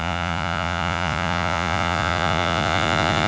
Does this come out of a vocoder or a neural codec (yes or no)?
yes